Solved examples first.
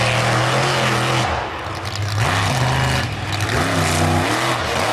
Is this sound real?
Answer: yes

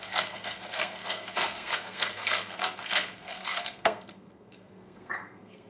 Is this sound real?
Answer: no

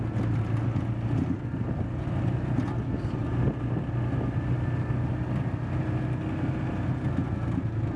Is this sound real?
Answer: yes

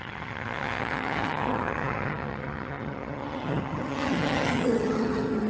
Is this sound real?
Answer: no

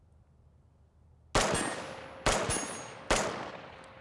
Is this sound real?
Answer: yes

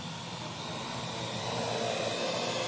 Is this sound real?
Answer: no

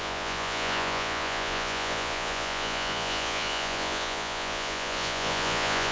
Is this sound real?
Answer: no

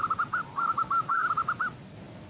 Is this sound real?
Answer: yes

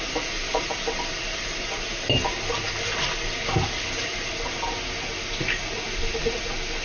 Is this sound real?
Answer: yes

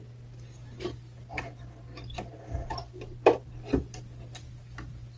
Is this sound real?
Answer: yes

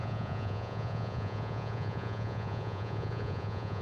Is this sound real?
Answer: no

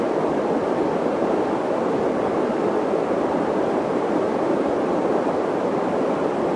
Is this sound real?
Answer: yes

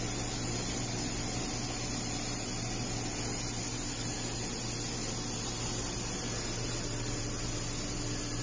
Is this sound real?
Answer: yes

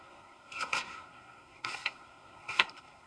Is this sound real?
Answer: no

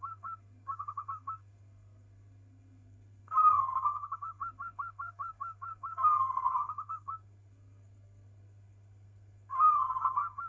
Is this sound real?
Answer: no